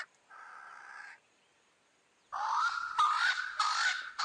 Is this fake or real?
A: real